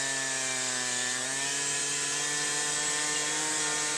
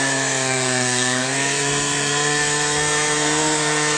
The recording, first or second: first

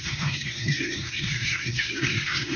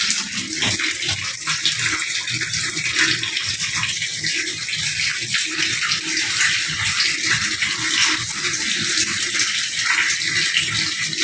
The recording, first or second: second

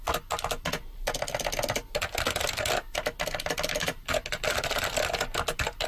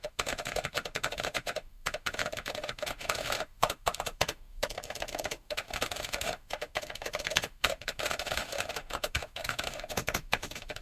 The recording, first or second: first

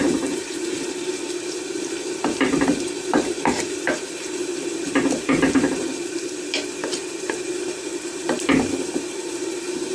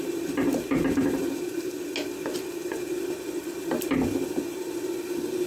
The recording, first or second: second